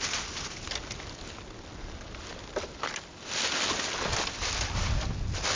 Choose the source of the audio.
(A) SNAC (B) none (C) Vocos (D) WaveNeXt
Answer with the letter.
B